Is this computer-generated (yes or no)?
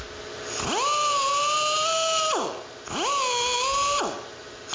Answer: no